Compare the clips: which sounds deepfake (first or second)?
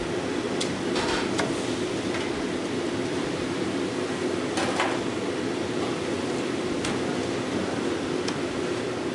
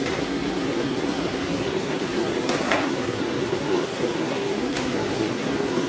second